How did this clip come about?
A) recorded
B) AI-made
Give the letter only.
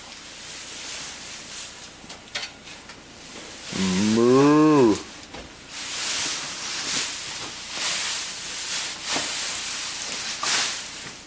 A